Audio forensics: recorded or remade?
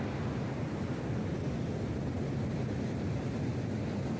recorded